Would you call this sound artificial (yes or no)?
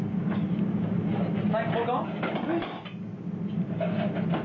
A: no